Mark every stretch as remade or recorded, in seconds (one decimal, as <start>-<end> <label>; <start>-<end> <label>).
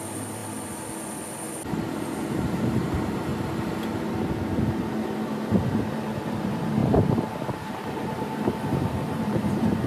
0.0-0.4 remade; 0.4-2.0 recorded; 2.0-3.3 remade; 3.3-5.9 recorded; 5.9-9.9 remade